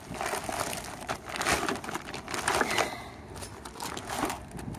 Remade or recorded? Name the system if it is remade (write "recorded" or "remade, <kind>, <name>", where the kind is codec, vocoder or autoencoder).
recorded